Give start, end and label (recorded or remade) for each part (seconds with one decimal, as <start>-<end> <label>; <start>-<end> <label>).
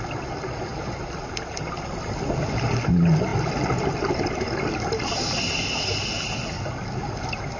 0.0-7.6 recorded